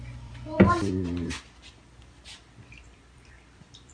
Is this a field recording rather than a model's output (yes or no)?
no